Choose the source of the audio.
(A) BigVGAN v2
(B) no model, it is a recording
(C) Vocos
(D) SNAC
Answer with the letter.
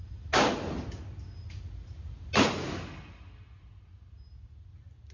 B